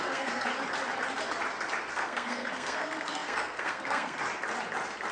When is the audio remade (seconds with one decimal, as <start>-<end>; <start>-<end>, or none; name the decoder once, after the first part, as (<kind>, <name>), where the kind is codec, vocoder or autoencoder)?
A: 0.0-0.5 (codec, SNAC); 1.9-4.2